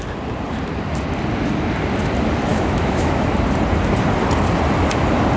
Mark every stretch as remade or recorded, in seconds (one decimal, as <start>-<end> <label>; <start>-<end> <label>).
0.0-2.5 recorded; 2.5-3.3 remade; 3.3-5.4 recorded